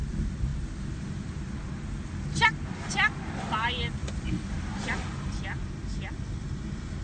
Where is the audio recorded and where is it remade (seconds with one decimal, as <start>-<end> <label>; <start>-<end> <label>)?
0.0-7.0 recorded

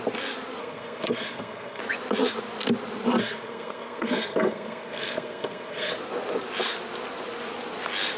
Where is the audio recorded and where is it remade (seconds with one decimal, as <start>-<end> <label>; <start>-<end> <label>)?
0.0-0.6 recorded; 0.6-1.8 remade; 1.8-3.2 recorded; 3.2-5.9 remade; 5.9-8.2 recorded

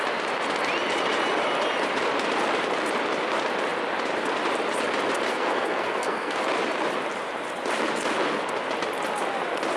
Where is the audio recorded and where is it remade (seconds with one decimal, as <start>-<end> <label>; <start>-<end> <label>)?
0.0-5.3 recorded; 5.3-6.4 remade; 6.4-9.8 recorded

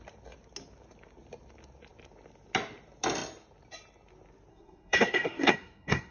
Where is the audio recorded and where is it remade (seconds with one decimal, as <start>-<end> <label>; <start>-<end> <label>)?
0.0-4.5 recorded; 4.5-6.1 remade

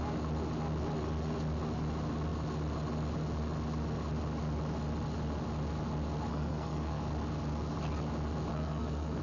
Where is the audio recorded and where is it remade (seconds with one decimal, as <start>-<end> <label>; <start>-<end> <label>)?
0.0-6.3 recorded; 6.3-7.0 remade; 7.0-8.5 recorded; 8.5-9.2 remade

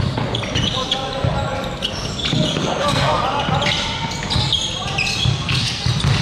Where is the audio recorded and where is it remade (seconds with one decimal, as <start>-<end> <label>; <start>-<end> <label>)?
0.0-2.6 recorded; 2.6-3.2 remade; 3.2-5.3 recorded; 5.3-5.8 remade; 5.8-6.2 recorded